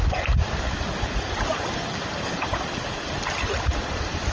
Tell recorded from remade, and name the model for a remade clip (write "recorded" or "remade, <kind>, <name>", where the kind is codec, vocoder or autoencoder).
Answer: recorded